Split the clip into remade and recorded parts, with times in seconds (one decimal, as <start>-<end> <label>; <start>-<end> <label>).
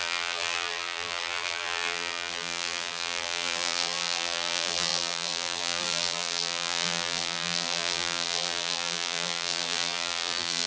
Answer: 0.0-10.7 remade